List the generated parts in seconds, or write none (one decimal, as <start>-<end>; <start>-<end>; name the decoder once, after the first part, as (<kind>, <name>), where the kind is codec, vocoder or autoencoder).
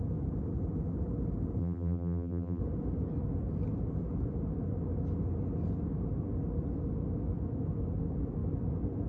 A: 1.6-2.6 (vocoder, BigVGAN v2)